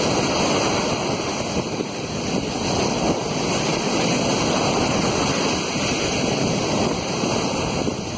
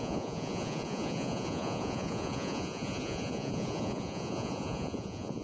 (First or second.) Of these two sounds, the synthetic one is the second